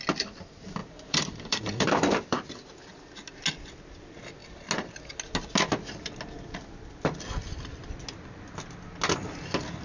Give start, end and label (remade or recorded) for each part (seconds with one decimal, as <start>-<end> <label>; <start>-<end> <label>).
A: 0.0-0.8 recorded; 0.8-2.5 remade; 2.5-9.8 recorded

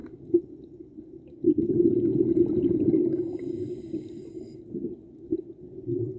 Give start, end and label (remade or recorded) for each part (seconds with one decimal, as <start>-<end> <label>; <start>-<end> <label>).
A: 0.0-6.2 recorded

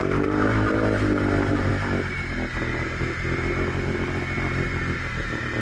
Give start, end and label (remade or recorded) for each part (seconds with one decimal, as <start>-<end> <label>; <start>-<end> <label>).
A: 0.0-1.7 remade; 1.7-5.1 recorded; 5.1-5.6 remade